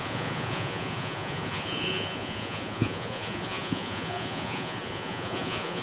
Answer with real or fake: fake